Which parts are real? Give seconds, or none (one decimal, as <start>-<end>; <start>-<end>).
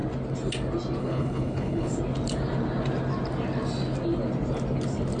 0.0-1.0; 1.9-5.2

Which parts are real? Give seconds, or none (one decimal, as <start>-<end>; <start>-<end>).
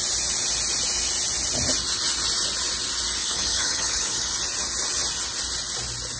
0.0-3.2; 4.3-6.2